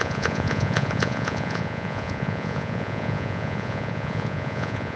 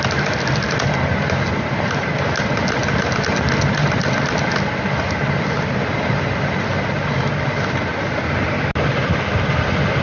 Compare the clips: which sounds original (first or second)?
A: second